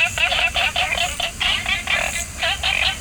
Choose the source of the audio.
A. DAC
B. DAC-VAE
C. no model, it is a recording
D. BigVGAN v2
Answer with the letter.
D